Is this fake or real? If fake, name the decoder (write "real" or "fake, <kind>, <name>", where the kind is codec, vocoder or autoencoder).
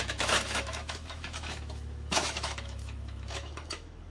fake, autoencoder, DAC-VAE